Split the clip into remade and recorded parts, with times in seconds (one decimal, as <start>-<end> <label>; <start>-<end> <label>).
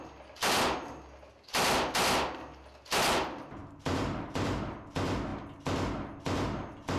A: 0.0-3.6 recorded; 3.6-4.5 remade; 4.5-7.0 recorded